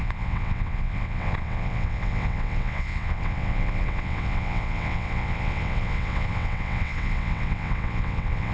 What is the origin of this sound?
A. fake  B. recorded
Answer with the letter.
A